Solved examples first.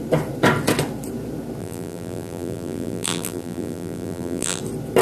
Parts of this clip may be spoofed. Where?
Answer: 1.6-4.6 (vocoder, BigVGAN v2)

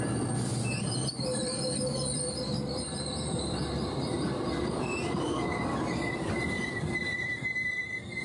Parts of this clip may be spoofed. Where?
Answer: 0.5-5.4 (vocoder, BigVGAN v2); 7.1-7.7

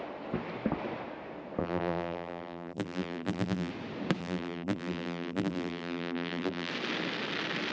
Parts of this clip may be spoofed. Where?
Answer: 1.6-3.7 (vocoder, BigVGAN v2); 4.2-6.7

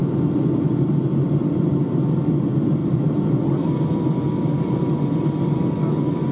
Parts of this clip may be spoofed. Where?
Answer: none

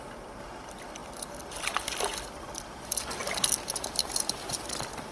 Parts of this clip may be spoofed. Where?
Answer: 0.0-3.2 (vocoder, BigVGAN v2); 3.7-5.1